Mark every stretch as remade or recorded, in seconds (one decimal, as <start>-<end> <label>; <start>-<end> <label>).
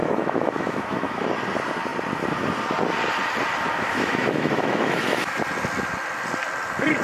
0.0-1.2 remade; 1.2-3.9 recorded; 3.9-5.4 remade; 5.4-7.0 recorded